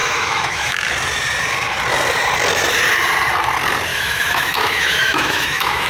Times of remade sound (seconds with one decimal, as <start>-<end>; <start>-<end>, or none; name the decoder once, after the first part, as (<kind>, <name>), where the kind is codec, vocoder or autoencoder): 0.0-0.8 (autoencoder, DAC-VAE); 3.9-5.9